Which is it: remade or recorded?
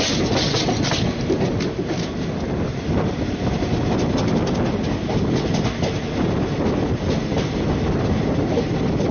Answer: recorded